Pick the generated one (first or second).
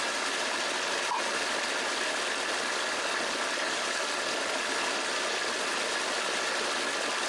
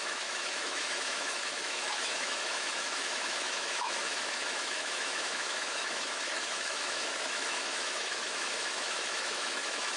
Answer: second